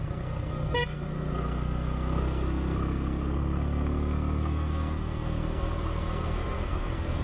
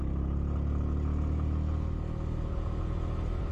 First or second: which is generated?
first